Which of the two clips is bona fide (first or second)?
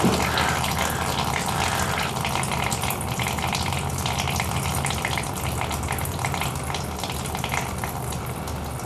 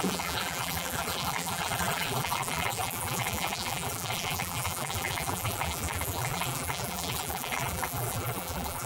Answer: first